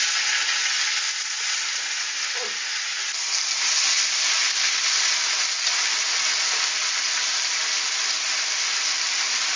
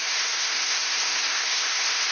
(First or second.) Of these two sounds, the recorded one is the first